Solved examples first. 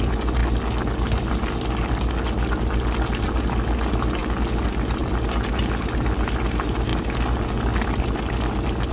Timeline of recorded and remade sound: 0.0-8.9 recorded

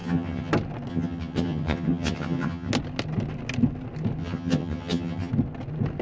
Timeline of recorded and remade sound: 0.0-0.5 remade; 0.5-0.9 recorded; 0.9-2.7 remade; 2.7-4.2 recorded; 4.2-5.3 remade; 5.3-6.0 recorded